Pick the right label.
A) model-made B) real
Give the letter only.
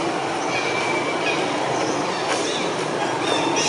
B